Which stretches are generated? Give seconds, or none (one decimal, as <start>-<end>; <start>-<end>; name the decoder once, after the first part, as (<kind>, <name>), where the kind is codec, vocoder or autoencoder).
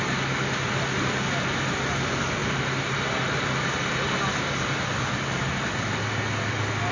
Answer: none